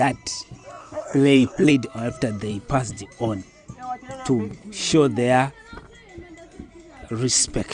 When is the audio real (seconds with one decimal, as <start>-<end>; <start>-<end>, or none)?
0.0-0.8; 1.7-7.7